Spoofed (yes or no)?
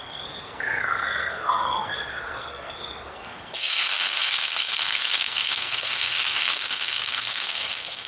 yes